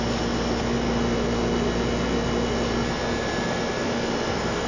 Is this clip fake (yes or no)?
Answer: no